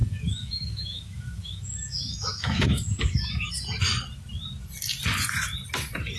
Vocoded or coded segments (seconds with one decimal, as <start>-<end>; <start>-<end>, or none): 0.0-3.5